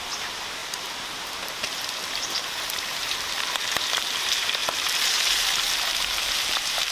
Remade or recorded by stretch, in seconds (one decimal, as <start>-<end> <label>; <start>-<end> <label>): 0.0-6.9 remade

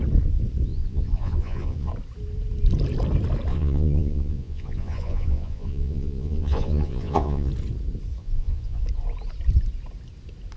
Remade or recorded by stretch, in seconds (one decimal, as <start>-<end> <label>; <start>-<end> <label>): 0.0-0.7 recorded; 0.7-1.9 remade; 1.9-3.5 recorded; 3.5-7.5 remade; 7.5-8.2 recorded; 8.2-8.8 remade; 8.8-10.6 recorded